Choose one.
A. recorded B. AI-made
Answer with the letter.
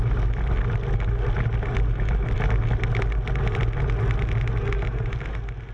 A